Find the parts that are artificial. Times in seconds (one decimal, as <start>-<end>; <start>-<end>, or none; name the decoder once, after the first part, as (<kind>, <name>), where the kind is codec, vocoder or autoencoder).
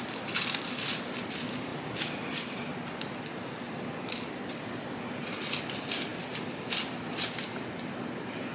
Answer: none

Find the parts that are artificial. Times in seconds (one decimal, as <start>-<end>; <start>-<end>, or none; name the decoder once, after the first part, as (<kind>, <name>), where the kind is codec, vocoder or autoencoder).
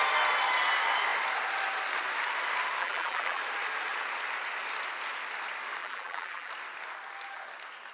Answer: 2.8-3.4 (vocoder, BigVGAN v2); 5.8-6.5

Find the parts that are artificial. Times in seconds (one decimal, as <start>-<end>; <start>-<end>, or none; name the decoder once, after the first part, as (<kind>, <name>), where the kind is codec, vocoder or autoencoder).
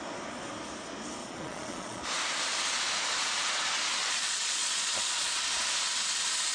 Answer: 1.2-2.0 (vocoder, Vocos); 4.0-5.4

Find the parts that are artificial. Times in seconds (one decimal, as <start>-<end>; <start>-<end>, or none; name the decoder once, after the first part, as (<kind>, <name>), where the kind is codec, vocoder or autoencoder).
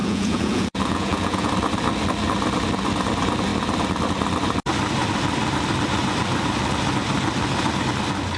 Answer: 0.0-1.5 (vocoder, Vocos)